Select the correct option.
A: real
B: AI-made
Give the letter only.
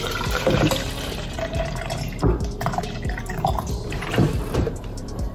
B